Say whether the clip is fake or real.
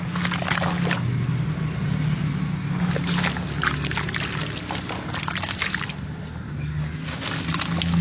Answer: real